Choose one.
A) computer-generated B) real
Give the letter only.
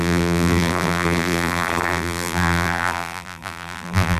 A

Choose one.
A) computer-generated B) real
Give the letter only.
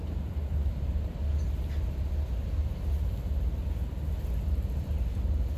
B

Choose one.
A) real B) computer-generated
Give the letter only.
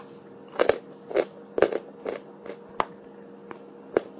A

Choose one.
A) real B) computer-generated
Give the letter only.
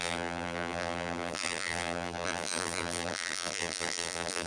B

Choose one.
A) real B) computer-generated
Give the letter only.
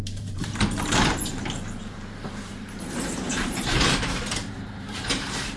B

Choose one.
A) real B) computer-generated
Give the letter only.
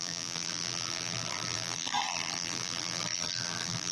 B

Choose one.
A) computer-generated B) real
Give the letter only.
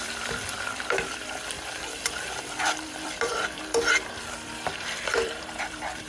A